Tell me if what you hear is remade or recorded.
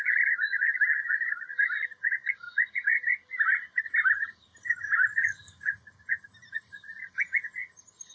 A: recorded